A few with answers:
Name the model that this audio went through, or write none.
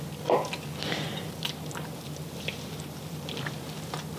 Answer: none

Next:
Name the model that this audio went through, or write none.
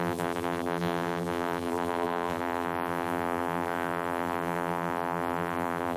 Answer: vocoder, BigVGAN v2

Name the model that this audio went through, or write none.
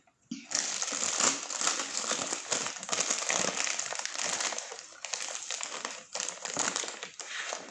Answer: none